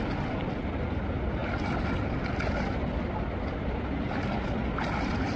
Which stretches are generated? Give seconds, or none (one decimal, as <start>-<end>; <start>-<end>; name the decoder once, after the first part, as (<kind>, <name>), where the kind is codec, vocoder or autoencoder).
none